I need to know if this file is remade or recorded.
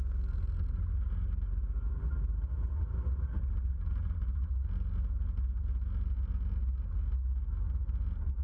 recorded